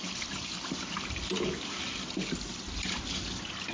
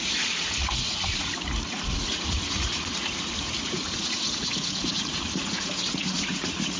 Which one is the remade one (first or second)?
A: second